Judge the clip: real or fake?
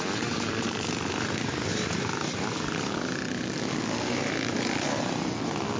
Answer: real